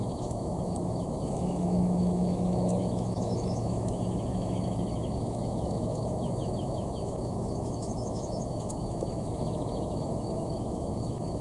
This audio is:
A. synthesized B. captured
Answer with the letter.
A